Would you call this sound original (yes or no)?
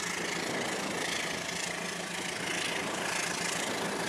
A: yes